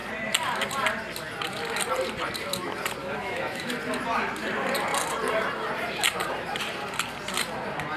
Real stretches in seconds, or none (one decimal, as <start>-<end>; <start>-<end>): 0.0-3.0; 3.7-8.0